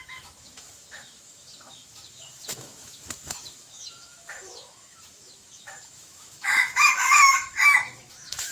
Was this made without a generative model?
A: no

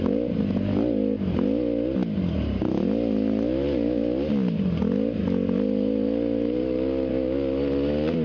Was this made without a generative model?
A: yes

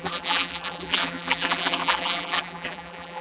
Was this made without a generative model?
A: no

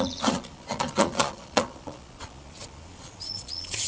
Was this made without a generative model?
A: no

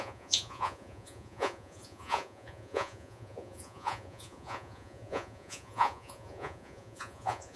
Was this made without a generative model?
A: no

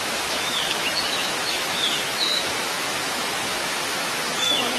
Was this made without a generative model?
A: no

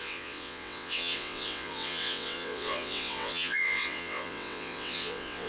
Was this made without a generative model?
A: no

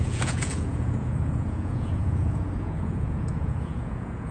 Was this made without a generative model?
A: no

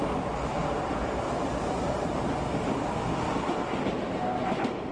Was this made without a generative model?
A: yes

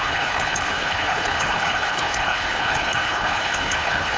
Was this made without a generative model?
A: no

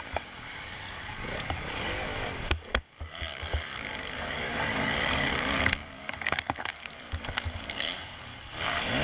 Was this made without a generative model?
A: no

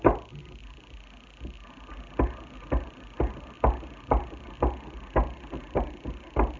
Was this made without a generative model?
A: yes